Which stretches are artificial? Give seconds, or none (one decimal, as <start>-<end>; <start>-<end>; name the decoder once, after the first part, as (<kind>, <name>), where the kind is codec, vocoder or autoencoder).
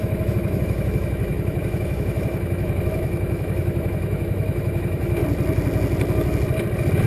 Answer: 0.0-5.2 (autoencoder, DAC-VAE)